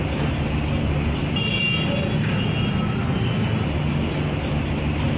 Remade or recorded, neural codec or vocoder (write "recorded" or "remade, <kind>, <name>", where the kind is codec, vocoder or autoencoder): recorded